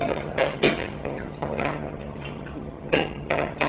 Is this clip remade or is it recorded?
remade